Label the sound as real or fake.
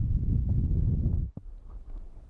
real